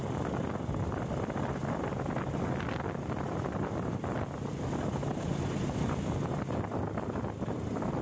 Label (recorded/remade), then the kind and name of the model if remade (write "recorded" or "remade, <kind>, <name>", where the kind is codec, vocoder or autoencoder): recorded